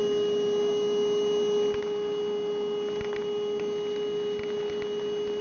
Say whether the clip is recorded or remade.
recorded